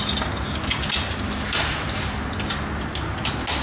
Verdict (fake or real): real